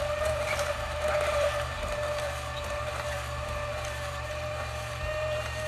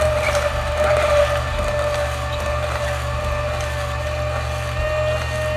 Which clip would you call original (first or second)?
second